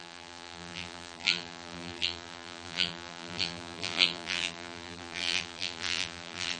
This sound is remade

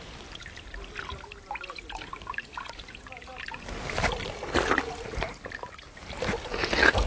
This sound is recorded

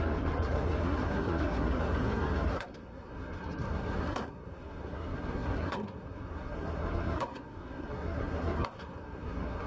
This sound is remade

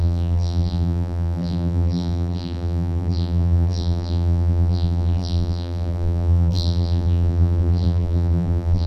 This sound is remade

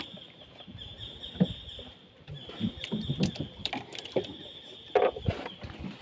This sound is recorded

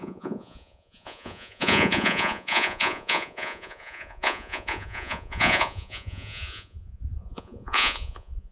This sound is remade